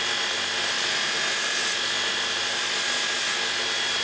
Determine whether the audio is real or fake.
real